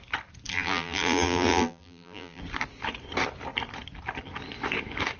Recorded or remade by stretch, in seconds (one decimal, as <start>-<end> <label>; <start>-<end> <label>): 0.0-0.5 recorded; 0.5-2.4 remade; 2.4-5.2 recorded